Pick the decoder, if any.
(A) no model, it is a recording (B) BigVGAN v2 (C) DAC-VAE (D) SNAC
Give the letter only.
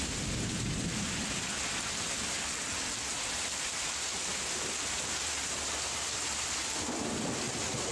A